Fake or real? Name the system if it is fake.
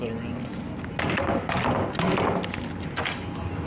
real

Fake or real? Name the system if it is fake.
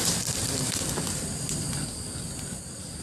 real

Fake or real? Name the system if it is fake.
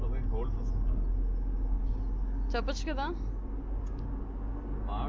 real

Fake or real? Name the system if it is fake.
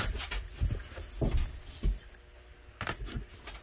real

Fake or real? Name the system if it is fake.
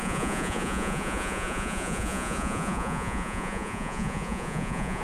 fake, vocoder, Vocos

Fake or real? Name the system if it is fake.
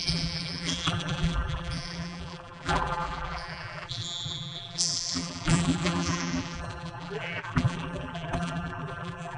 fake, vocoder, BigVGAN v2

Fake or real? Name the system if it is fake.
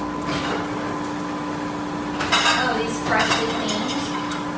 real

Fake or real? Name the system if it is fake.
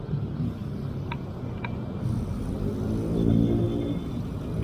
real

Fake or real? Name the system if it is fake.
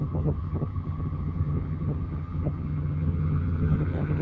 fake, vocoder, HiFi-GAN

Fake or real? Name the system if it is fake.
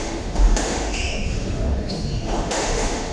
fake, autoencoder, DAC-VAE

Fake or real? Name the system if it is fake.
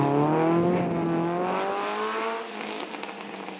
real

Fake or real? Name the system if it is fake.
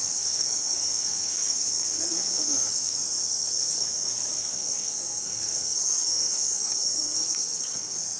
fake, codec, SNAC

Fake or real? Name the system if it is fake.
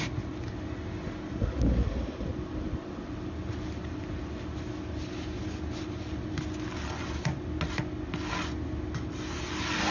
real